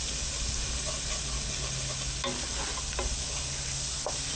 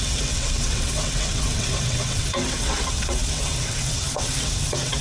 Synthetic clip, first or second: second